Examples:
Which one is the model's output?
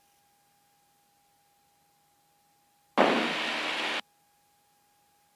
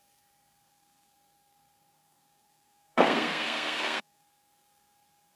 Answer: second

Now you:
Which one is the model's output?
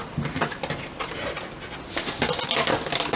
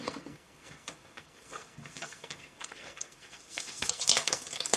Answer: second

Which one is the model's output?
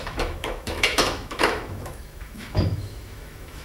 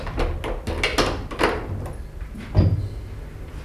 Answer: first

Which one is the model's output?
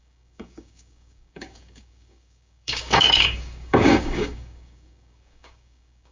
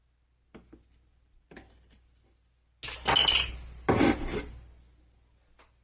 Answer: first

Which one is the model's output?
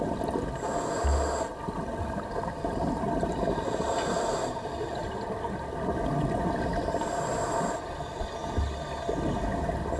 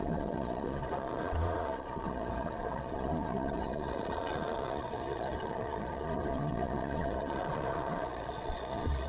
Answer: second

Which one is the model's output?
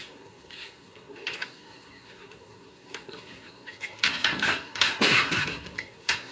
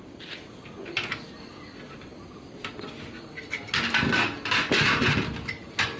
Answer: first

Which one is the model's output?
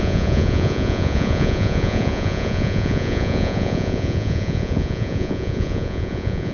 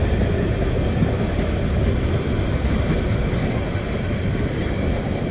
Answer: first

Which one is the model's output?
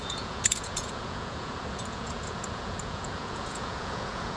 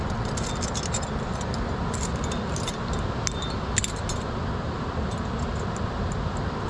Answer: first